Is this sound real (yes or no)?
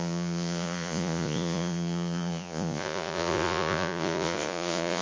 no